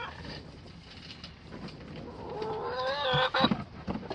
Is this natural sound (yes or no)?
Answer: yes